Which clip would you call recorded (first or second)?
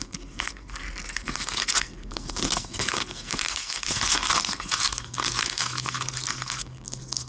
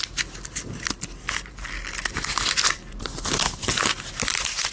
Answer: second